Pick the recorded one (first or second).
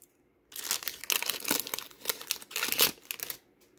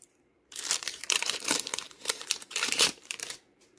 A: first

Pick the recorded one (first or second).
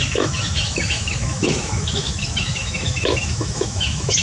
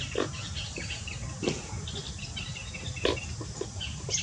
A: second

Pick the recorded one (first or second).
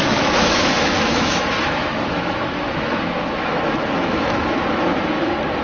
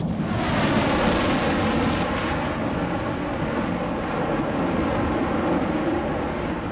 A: second